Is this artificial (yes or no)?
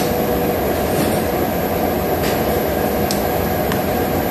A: no